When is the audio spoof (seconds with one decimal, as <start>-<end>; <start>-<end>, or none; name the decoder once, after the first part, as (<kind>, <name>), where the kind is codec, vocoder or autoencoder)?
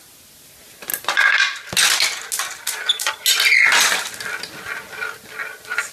none